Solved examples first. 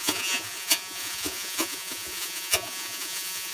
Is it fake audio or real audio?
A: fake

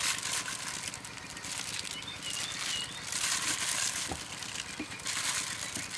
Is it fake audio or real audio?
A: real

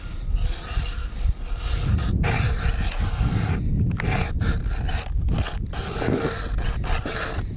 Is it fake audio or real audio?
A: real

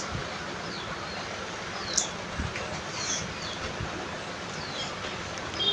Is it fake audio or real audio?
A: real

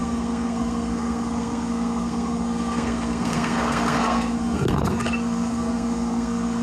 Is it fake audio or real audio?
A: fake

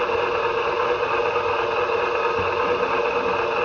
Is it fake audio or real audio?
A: real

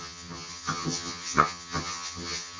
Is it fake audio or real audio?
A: fake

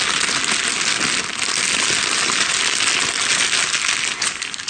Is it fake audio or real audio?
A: real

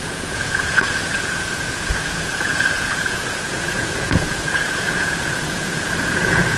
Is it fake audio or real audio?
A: fake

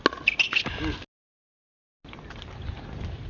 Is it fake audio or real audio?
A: real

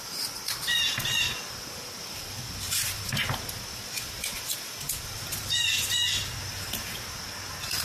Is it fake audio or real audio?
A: real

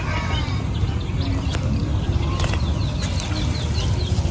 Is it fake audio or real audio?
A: real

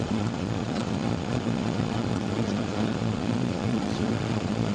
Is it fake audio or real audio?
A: fake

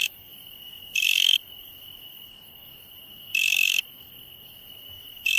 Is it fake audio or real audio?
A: fake